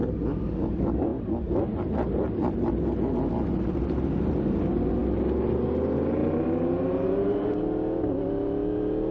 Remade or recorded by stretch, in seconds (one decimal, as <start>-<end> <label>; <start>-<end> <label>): 0.0-9.1 recorded